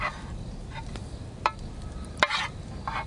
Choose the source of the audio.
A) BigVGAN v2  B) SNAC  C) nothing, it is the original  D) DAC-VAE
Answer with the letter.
C